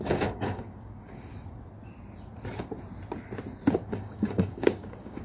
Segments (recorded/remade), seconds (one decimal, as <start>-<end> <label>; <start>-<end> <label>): 0.0-1.3 remade; 1.3-3.9 recorded; 3.9-5.2 remade

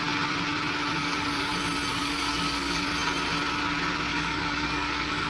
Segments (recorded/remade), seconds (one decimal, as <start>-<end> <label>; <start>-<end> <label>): 0.0-0.9 recorded; 0.9-1.5 remade; 1.5-1.9 recorded; 1.9-2.9 remade; 2.9-4.1 recorded; 4.1-5.3 remade

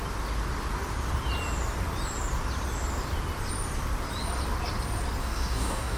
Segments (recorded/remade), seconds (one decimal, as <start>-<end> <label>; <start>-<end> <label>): 0.0-5.2 recorded; 5.2-6.0 remade

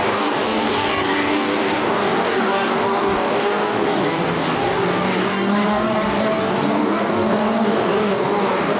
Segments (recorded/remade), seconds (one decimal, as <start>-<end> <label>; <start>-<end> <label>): 0.0-8.8 remade

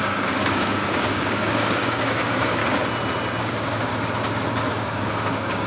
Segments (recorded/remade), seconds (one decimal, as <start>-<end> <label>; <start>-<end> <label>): 0.0-2.6 remade; 2.6-3.4 recorded; 3.4-3.9 remade; 3.9-4.7 recorded; 4.7-5.7 remade

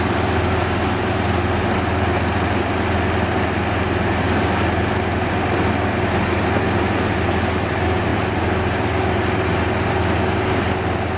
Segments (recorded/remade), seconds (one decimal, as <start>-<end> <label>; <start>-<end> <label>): 0.0-11.2 recorded

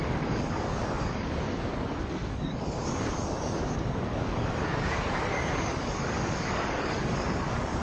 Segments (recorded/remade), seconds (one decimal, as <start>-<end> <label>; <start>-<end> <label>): 0.0-7.8 remade

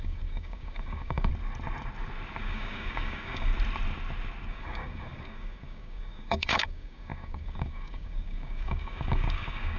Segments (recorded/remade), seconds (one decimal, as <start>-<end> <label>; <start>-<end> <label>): 0.0-1.3 remade; 1.3-2.4 recorded; 2.4-3.5 remade; 3.5-4.5 recorded; 4.5-9.8 remade